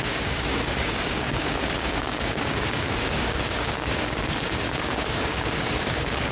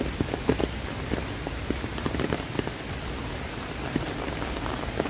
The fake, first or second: first